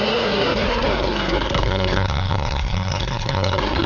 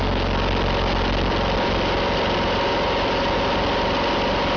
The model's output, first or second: first